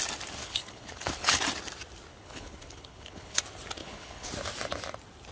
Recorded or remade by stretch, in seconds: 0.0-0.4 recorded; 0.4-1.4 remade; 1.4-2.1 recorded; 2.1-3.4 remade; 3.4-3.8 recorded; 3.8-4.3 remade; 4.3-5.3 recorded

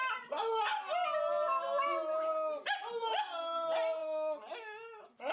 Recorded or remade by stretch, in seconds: 0.0-5.3 recorded

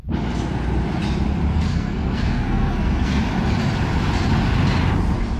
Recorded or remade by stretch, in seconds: 0.0-1.5 recorded; 1.5-3.2 remade; 3.2-5.4 recorded